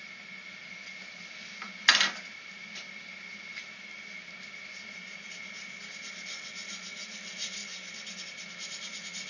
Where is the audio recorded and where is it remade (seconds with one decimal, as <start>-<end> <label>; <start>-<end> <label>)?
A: 0.0-9.3 recorded